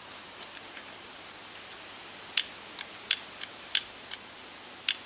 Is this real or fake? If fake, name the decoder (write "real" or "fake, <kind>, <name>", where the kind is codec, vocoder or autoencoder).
real